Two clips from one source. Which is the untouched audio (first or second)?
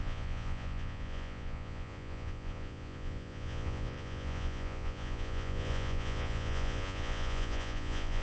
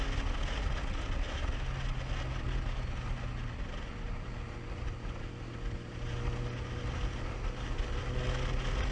second